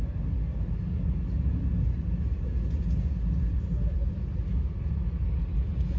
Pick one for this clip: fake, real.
real